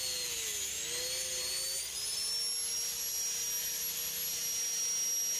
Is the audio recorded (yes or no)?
yes